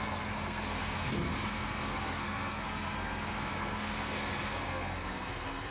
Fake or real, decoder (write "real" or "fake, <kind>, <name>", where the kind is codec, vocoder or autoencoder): fake, codec, SNAC